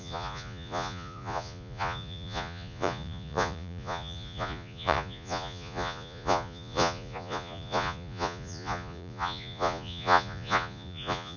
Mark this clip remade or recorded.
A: remade